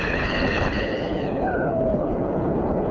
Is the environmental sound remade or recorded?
remade